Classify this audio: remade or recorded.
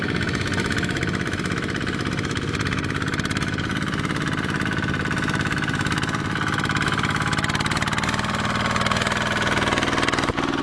recorded